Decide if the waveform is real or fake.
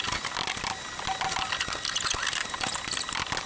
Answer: real